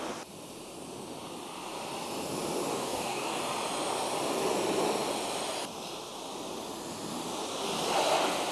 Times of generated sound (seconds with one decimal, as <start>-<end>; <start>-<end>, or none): 2.7-3.4